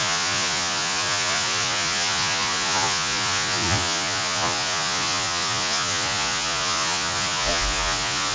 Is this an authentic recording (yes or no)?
no